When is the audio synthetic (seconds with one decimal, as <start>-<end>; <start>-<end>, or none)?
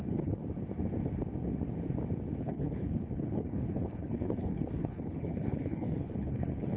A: 0.0-0.4; 2.4-6.8